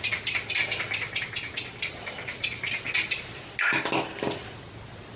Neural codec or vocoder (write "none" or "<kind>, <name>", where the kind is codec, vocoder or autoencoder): none